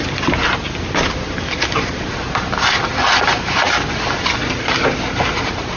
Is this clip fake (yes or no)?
no